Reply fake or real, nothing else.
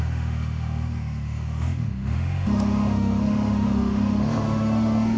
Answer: fake